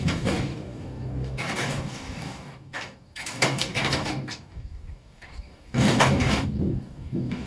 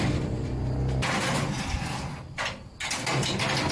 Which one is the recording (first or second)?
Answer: second